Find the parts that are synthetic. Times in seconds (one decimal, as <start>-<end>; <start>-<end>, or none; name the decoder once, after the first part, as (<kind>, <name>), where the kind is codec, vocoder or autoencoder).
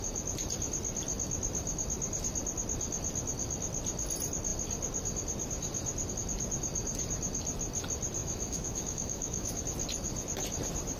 8.2-9.6 (autoencoder, DAC-VAE)